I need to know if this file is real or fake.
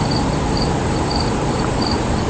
real